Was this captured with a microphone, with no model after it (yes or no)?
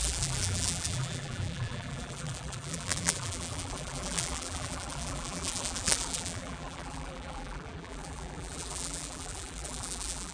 no